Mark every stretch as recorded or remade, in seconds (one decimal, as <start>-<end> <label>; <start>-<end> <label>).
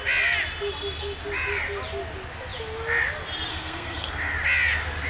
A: 0.0-3.5 recorded; 3.5-4.1 remade; 4.1-5.1 recorded